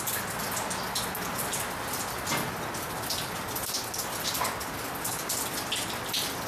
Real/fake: real